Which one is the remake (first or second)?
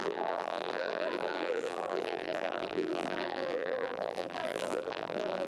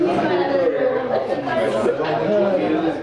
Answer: first